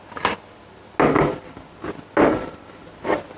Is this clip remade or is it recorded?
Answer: recorded